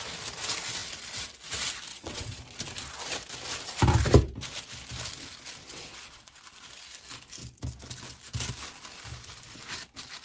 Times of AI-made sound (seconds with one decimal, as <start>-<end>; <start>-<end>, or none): 1.9-2.4; 5.7-6.4